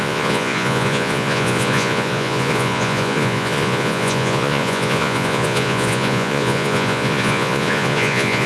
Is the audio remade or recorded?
remade